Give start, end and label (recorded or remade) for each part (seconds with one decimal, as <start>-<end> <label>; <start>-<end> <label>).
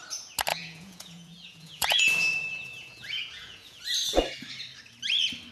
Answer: 0.0-0.5 recorded; 0.5-3.8 remade; 3.8-5.5 recorded